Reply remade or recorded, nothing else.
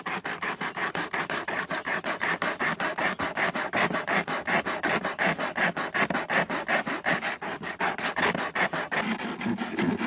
recorded